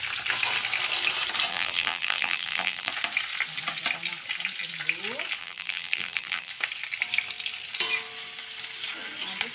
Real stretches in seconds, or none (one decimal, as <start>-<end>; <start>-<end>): 0.0-1.5; 2.9-5.4; 6.5-9.5